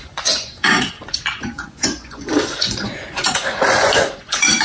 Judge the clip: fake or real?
fake